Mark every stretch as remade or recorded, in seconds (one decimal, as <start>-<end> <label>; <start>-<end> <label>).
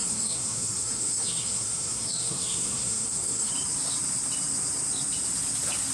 0.0-3.5 remade; 3.5-5.9 recorded